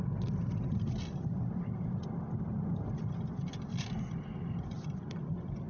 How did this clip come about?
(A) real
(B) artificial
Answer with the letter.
A